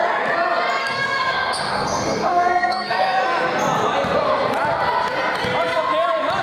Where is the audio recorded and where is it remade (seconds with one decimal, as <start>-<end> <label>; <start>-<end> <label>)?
0.0-0.8 recorded; 0.8-3.2 remade; 3.2-6.4 recorded